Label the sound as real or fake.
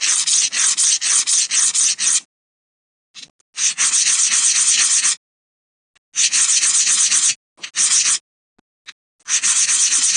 real